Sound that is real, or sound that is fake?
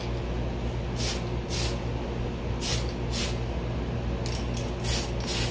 real